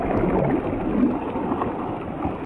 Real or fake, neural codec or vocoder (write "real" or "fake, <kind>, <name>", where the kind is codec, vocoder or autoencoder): real